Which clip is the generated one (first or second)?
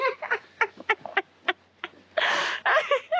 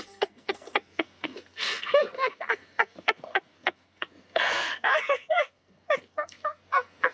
second